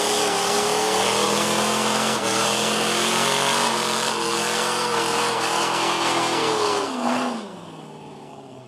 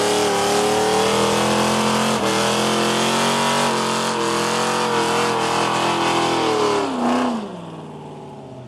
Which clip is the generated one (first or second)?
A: first